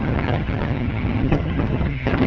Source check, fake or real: fake